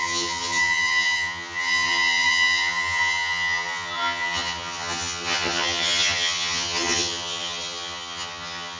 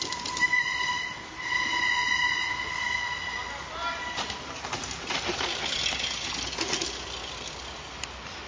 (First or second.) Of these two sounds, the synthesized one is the first